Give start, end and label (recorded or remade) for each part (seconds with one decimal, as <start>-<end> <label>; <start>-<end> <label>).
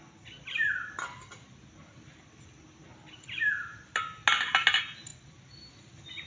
0.0-6.3 recorded